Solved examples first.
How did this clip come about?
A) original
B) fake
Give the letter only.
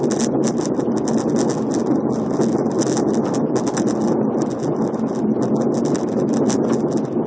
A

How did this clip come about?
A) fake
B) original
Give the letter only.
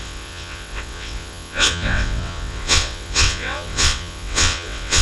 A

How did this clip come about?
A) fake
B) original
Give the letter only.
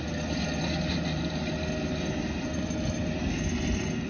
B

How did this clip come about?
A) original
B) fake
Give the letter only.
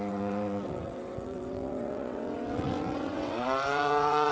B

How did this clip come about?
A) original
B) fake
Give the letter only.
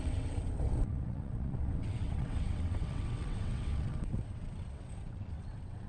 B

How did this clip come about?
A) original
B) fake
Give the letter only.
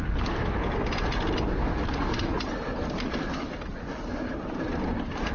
A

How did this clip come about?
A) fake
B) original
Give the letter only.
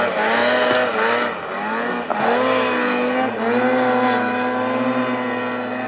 B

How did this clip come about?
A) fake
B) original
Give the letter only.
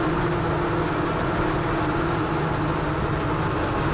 B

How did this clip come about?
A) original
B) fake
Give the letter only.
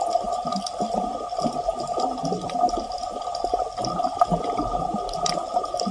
A